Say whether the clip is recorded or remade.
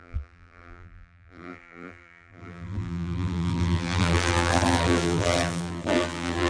remade